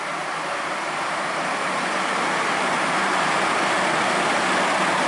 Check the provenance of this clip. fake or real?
real